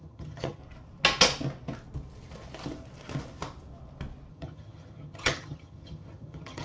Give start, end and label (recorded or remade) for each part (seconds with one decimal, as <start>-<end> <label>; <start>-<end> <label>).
0.0-0.6 remade; 0.6-4.3 recorded; 4.3-6.6 remade